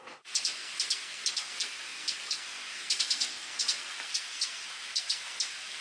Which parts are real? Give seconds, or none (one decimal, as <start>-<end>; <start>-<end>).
none

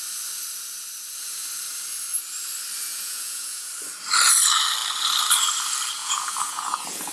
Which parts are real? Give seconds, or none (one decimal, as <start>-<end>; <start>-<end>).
0.0-2.9; 3.7-6.0

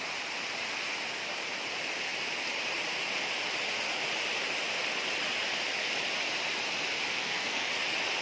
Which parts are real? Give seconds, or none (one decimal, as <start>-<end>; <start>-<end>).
0.0-7.1; 7.7-8.2

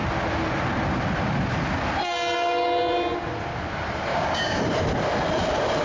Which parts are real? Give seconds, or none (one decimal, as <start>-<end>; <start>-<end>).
0.0-4.1; 4.6-5.8